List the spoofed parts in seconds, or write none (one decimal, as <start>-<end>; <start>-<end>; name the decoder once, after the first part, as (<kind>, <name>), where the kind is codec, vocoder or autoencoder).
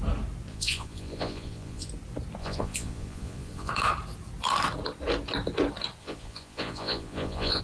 0.5-1.9 (vocoder, Vocos); 2.4-3.7; 6.0-7.6